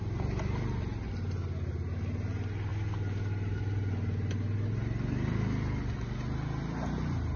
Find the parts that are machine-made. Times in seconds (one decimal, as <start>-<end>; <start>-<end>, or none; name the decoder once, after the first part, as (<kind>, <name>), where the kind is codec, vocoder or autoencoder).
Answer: none

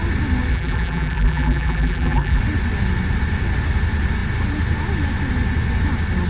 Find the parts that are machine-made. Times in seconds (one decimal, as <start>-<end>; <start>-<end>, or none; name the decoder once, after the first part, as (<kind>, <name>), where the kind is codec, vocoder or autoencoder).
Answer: 0.5-2.4 (vocoder, BigVGAN v2)